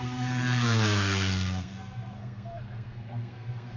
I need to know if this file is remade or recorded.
remade